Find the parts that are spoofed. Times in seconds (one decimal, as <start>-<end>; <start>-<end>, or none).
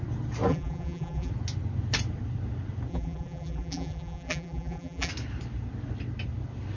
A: 0.5-1.3; 2.9-5.1